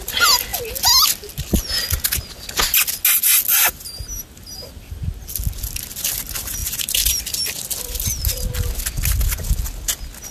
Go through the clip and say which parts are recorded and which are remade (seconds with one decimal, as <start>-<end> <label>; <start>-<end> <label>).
0.0-6.6 recorded; 6.6-7.2 remade; 7.2-10.3 recorded